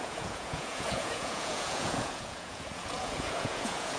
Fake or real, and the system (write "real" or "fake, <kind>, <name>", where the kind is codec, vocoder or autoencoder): fake, vocoder, Vocos